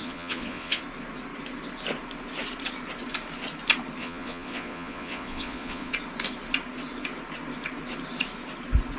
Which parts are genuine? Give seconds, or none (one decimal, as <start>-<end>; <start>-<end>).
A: 0.8-4.0; 5.9-9.0